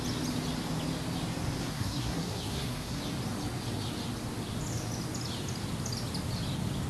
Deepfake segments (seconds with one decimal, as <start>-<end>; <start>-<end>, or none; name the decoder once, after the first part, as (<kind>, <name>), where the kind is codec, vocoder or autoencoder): 1.6-3.0 (codec, SNAC)